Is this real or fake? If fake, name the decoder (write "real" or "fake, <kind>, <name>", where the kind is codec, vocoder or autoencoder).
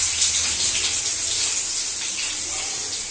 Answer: real